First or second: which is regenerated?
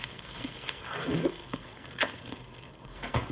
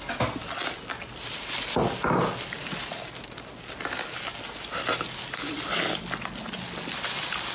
first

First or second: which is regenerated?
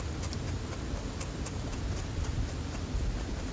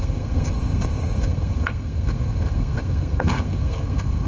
second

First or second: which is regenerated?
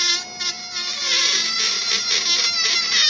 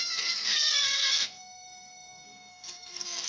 second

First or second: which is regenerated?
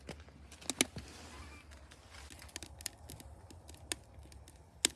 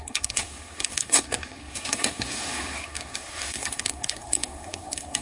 second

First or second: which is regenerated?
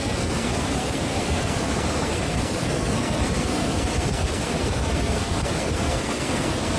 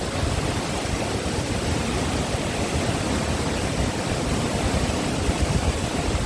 first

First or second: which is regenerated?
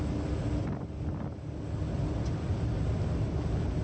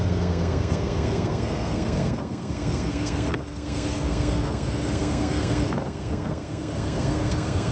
second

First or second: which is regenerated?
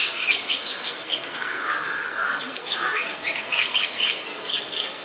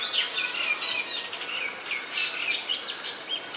first